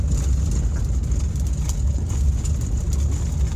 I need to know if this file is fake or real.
real